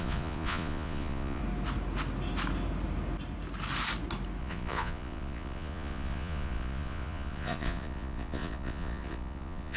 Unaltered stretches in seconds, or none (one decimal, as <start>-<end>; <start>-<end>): 1.4-4.4